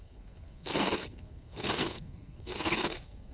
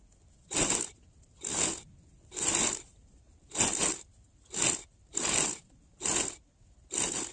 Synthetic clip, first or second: first